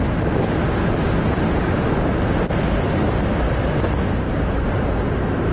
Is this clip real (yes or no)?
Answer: yes